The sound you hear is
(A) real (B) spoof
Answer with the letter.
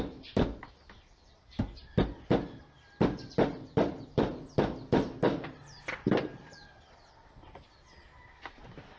B